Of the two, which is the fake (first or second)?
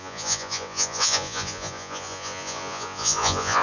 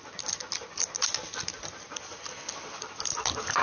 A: first